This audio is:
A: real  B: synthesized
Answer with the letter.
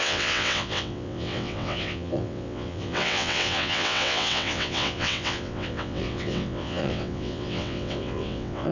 B